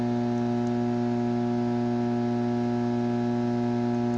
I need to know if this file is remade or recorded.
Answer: recorded